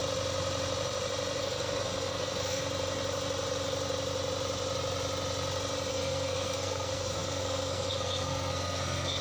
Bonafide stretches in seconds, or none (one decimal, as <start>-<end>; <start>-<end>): 0.0-1.4; 2.6-5.9